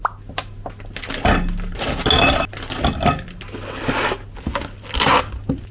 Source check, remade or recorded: recorded